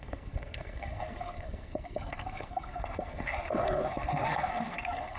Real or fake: fake